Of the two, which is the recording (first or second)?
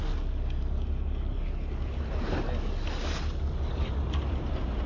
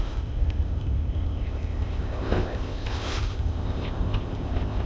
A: first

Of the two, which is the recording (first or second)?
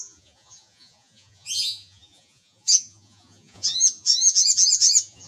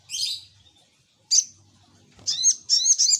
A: second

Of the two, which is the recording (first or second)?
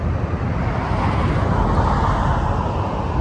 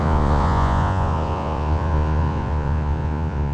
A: first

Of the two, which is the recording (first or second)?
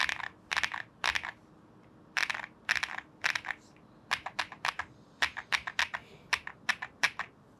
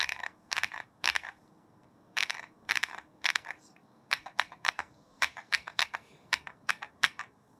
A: first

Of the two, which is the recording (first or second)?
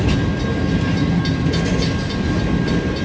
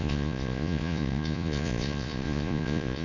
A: first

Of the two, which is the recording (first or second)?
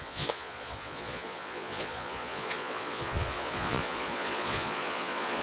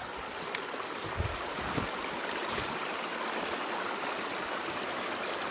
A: second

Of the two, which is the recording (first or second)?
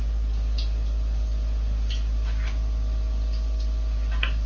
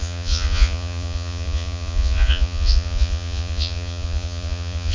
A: first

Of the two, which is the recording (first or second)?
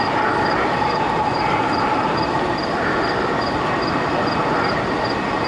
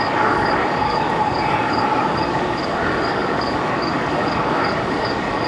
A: first